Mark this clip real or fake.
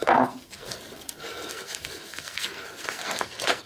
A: fake